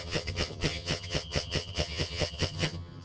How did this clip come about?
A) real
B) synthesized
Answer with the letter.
B